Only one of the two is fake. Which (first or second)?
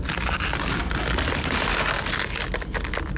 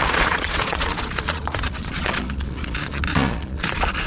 second